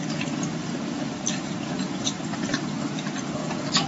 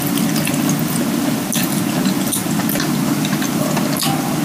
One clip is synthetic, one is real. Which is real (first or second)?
second